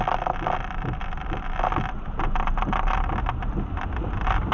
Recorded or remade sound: recorded